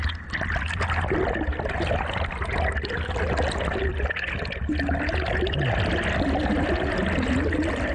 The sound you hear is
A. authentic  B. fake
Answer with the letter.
A